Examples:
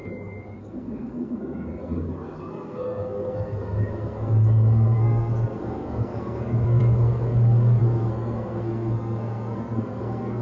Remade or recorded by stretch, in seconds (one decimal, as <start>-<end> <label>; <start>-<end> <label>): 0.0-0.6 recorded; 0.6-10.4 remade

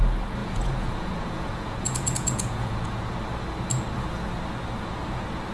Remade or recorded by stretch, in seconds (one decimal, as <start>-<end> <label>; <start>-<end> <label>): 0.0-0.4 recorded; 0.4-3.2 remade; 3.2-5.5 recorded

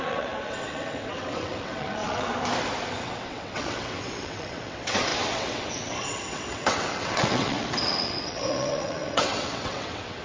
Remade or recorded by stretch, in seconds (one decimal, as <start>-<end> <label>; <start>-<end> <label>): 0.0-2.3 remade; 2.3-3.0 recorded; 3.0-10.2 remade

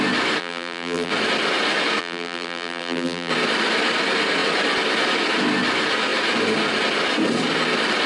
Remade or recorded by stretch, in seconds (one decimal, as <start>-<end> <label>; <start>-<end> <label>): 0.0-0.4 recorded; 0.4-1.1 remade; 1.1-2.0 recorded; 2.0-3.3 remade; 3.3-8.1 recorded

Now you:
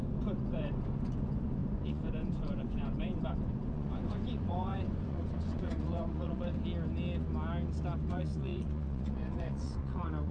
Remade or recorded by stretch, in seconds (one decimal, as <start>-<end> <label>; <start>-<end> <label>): 0.0-6.5 remade; 6.5-8.1 recorded; 8.1-10.3 remade

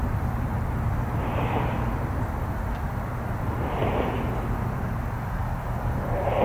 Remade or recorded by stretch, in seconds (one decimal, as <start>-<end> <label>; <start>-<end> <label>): 0.0-0.9 remade; 0.9-6.4 recorded